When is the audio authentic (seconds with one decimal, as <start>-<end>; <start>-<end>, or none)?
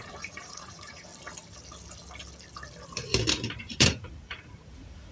1.1-3.6